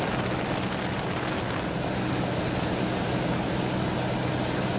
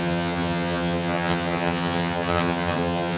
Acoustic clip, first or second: first